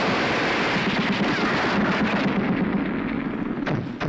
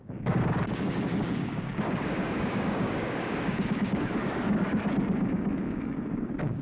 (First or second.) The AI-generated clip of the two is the second